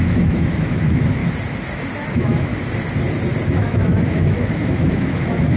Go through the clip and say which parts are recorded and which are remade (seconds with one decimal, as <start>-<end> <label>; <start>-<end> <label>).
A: 0.0-1.2 remade; 1.2-2.1 recorded; 2.1-2.5 remade; 2.5-3.5 recorded; 3.5-5.6 remade